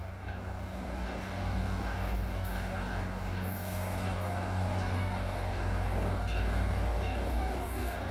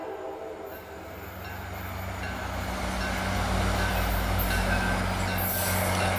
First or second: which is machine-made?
first